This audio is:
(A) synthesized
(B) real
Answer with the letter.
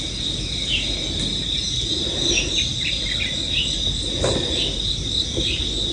B